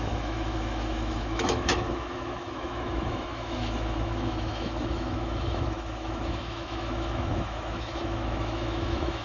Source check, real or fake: fake